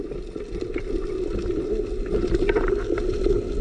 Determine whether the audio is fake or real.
real